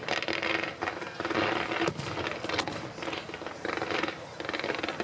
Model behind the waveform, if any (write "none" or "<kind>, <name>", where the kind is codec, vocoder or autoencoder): none